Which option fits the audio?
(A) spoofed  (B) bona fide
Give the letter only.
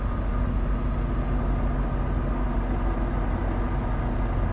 B